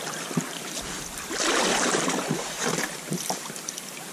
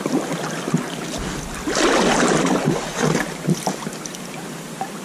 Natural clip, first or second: second